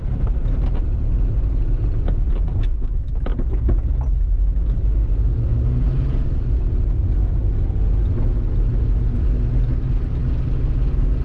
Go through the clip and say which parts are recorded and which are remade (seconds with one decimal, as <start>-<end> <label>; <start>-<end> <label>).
0.0-2.7 recorded; 2.7-3.5 remade; 3.5-11.2 recorded